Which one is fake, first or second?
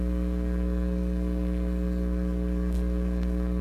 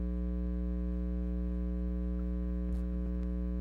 first